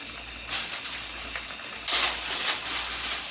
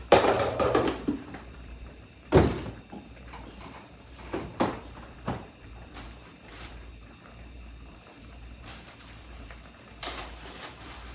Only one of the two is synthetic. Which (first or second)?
second